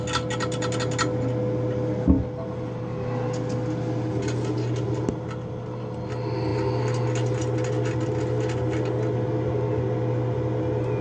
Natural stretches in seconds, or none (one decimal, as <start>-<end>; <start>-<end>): 0.0-11.0